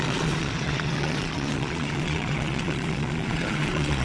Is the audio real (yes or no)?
no